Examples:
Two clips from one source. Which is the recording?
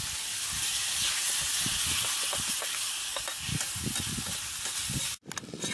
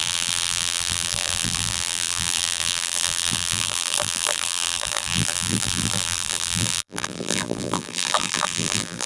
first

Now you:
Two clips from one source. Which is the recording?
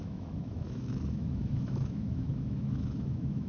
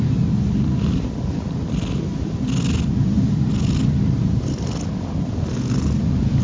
second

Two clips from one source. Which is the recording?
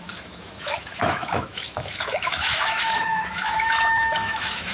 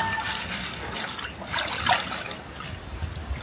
second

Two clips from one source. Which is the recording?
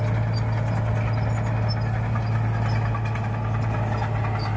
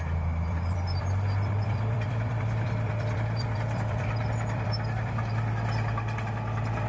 first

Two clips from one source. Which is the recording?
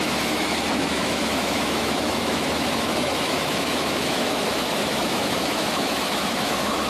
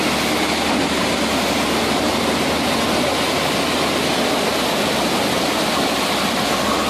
second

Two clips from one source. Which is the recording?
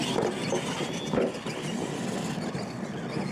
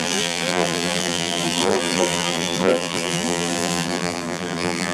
first